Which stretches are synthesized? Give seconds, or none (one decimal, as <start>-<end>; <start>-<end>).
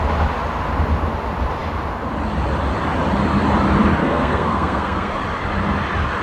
4.0-5.1